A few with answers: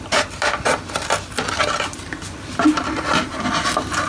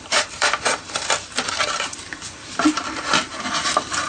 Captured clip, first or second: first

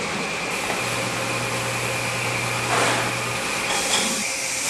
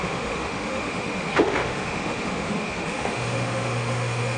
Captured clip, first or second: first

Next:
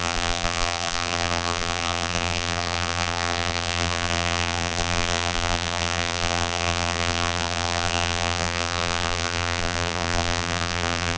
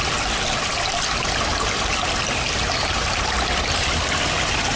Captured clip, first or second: second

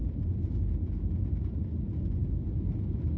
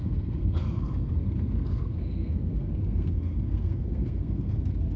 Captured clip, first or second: first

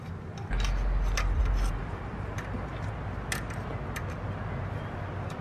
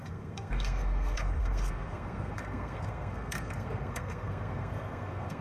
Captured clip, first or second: first